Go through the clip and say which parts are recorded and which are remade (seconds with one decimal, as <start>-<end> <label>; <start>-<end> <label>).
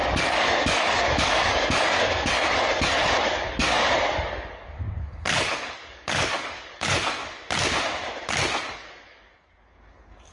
0.0-7.2 remade; 7.2-8.6 recorded; 8.6-10.3 remade